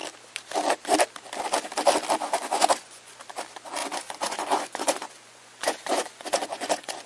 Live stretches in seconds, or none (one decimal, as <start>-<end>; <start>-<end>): 0.0-2.2; 3.2-3.8